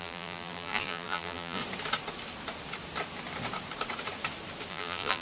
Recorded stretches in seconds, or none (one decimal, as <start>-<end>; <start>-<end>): 1.6-4.7

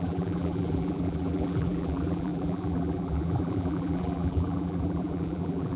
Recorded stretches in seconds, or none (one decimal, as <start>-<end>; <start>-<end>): none

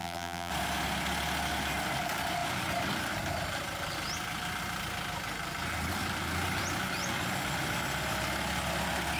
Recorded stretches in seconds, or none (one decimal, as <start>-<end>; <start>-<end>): 0.5-9.2

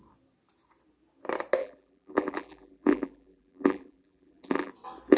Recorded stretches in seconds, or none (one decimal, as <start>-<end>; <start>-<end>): 0.0-1.6; 4.7-5.2